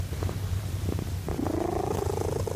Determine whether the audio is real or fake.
real